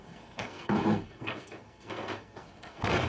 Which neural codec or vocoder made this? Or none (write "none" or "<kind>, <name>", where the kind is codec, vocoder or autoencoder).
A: codec, SNAC